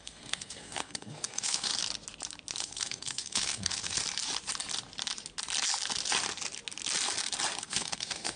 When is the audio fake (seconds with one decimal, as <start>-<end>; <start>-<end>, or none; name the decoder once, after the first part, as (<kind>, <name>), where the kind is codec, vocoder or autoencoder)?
0.0-1.7 (codec, SNAC); 2.6-4.0; 7.6-8.4